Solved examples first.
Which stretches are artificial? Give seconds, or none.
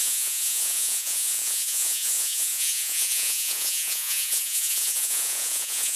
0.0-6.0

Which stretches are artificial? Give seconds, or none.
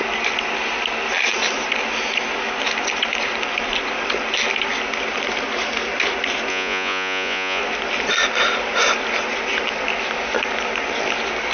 6.5-7.6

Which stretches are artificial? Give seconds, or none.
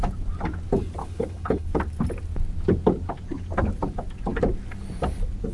1.0-1.7